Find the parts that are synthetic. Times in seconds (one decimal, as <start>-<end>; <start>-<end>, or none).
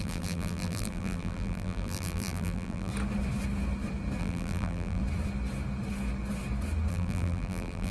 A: 0.0-2.9; 4.2-5.0; 6.9-7.9